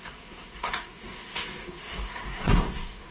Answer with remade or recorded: remade